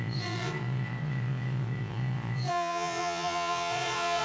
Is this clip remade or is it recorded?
remade